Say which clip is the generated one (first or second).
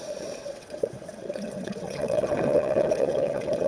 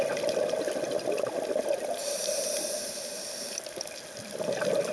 first